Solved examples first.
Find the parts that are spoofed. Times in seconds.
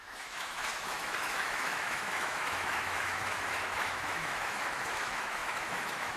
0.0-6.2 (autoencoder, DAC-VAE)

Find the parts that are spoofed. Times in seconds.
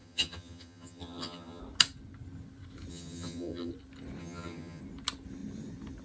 0.0-1.6 (vocoder, HiFi-GAN); 2.9-3.7; 4.2-4.8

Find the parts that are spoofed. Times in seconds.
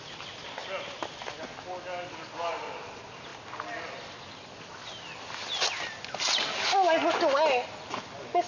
none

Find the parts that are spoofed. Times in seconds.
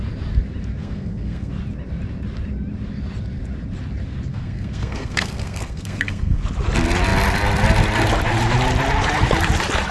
0.8-1.5 (codec, SNAC); 4.3-6.4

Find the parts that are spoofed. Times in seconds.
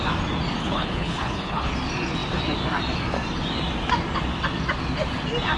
0.6-1.7 (codec, HILCodec)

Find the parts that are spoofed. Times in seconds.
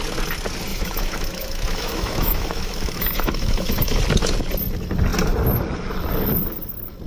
0.7-4.0 (autoencoder, DAC-VAE)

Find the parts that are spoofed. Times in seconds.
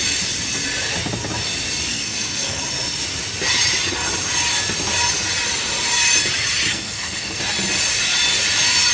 1.9-2.6 (codec, SNAC); 6.7-7.4